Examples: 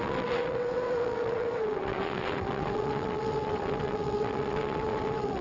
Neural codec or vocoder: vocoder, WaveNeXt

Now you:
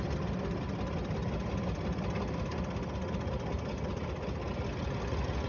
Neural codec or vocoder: none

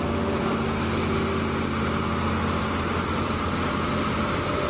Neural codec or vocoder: none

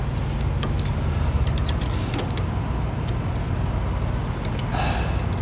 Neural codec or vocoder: none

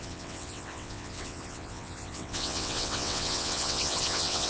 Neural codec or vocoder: vocoder, WaveNeXt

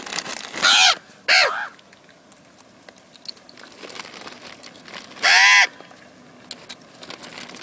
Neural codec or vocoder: none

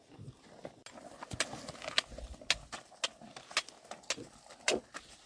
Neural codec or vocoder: none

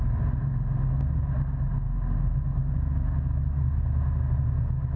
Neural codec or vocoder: none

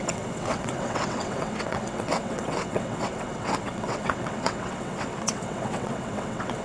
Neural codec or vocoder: vocoder, WaveNeXt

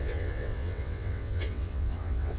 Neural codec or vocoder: vocoder, WaveNeXt